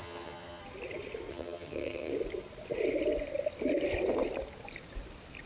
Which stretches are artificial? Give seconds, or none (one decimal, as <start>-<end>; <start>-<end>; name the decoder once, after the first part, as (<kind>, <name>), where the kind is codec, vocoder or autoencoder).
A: 0.0-0.6 (vocoder, HiFi-GAN); 1.3-2.1